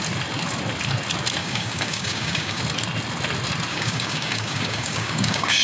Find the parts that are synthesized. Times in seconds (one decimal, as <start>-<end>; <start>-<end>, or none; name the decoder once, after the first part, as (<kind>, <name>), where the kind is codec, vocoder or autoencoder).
1.4-2.6 (codec, DAC); 3.7-5.6